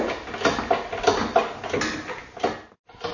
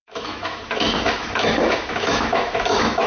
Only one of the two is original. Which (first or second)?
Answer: first